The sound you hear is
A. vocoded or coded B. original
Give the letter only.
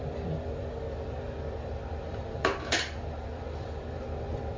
A